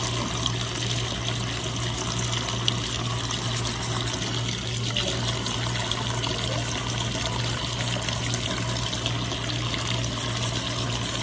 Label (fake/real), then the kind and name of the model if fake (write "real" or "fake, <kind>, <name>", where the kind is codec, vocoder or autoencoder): real